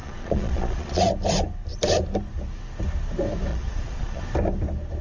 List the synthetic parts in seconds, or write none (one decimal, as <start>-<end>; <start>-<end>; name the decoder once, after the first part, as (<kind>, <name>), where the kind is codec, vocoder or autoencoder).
0.0-1.0 (vocoder, Vocos); 3.5-4.2